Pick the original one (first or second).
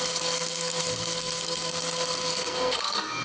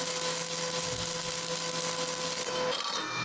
second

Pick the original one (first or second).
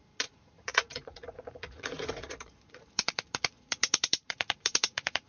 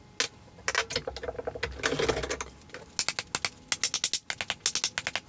second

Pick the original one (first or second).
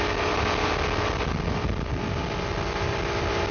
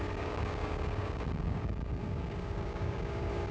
first